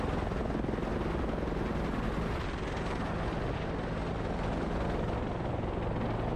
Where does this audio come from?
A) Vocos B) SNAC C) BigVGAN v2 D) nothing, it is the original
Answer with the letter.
D